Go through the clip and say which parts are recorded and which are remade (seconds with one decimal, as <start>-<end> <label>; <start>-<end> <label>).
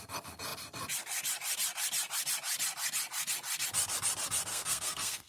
0.0-4.5 recorded; 4.5-5.3 remade